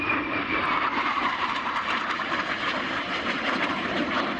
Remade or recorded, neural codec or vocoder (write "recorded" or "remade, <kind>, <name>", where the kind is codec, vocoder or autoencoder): remade, vocoder, BigVGAN v2